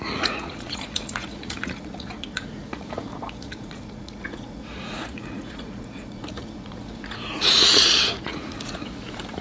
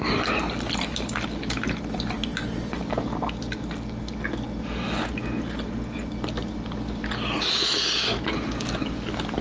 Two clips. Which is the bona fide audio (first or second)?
second